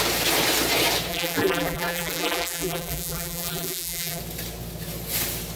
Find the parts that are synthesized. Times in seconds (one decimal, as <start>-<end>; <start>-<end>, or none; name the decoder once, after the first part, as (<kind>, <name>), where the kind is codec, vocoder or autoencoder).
1.1-4.2 (vocoder, BigVGAN v2)